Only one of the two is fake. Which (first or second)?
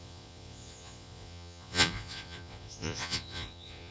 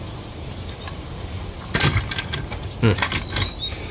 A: first